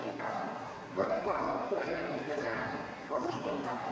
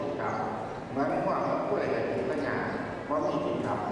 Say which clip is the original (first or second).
second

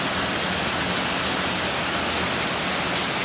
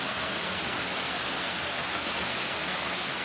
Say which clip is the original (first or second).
first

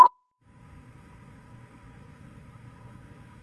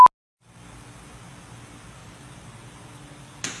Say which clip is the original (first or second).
second